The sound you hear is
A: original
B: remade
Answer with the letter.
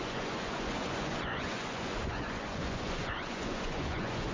B